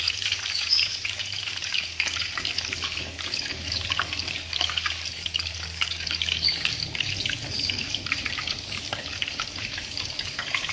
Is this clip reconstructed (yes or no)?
yes